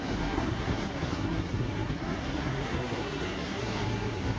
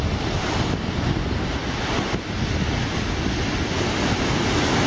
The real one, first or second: second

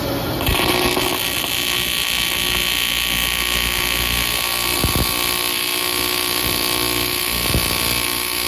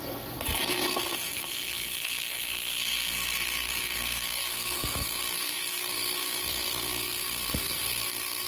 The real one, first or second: first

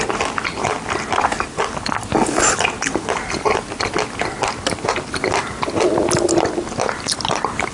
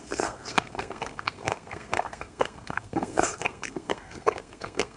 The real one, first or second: first